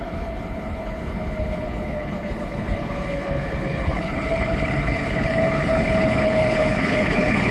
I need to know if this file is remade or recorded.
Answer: remade